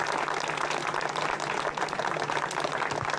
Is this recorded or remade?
recorded